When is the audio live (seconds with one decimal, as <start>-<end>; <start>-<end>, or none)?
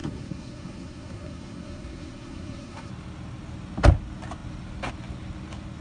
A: 2.9-5.8